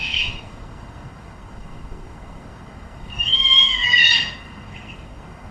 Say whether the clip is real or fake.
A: fake